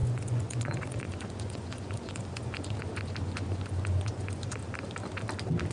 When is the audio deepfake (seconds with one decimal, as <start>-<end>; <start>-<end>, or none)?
0.0-4.6